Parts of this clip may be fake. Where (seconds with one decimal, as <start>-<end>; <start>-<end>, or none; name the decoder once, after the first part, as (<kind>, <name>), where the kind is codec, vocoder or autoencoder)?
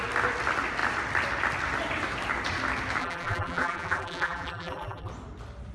3.0-5.1 (vocoder, BigVGAN v2)